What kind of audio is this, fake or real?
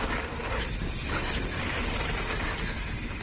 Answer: real